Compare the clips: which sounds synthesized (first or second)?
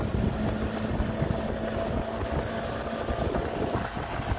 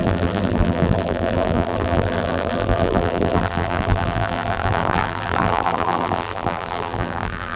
second